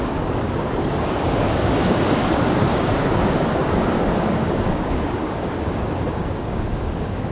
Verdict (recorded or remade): remade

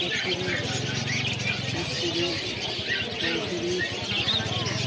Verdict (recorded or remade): recorded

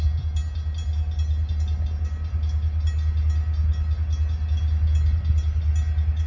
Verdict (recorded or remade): recorded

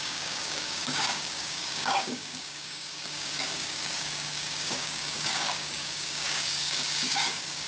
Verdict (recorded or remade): remade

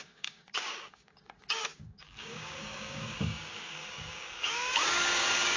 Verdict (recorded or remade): remade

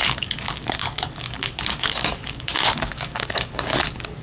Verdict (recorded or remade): remade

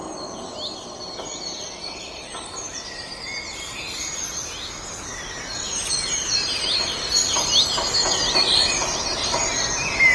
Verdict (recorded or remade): recorded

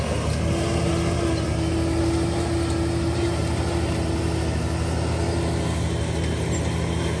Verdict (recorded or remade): recorded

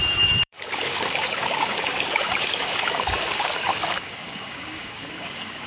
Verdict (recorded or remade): remade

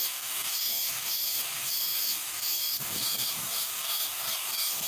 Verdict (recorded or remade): remade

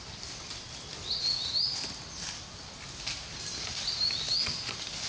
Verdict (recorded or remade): recorded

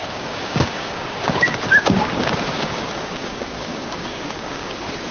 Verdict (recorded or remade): remade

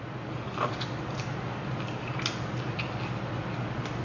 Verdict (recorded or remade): recorded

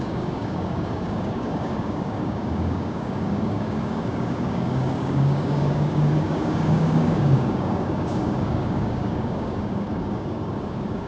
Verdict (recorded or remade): remade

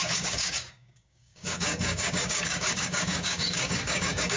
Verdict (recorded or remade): remade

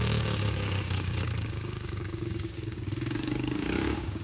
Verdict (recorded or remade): remade